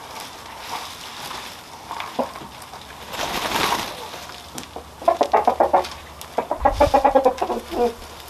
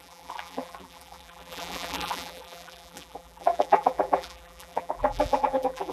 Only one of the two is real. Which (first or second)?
first